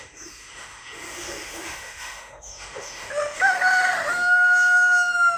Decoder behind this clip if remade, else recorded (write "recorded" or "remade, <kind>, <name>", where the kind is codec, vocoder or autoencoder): remade, autoencoder, DAC-VAE